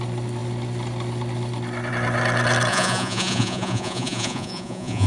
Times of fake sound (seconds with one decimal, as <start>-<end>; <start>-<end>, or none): 2.7-5.1